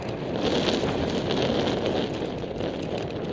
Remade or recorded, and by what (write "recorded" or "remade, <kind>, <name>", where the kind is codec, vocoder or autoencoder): recorded